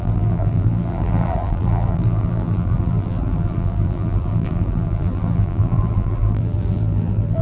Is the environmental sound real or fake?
fake